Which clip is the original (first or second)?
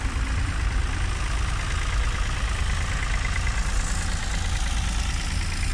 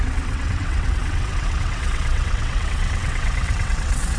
first